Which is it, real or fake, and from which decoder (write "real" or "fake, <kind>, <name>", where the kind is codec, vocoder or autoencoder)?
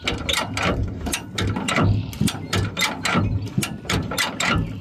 real